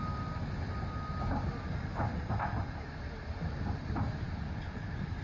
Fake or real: real